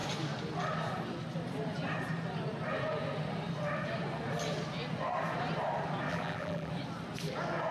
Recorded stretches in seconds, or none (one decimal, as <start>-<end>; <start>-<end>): 0.0-6.1; 6.7-7.7